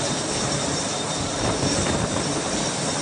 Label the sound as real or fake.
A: real